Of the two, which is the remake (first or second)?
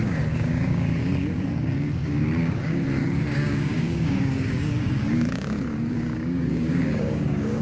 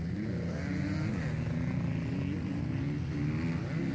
first